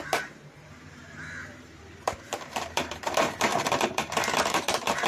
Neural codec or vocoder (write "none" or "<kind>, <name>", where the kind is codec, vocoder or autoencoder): vocoder, BigVGAN v2